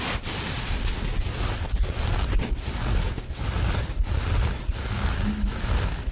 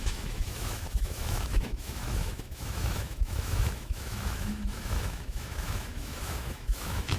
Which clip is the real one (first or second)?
first